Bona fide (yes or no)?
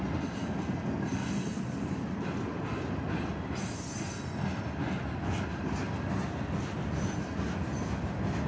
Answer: yes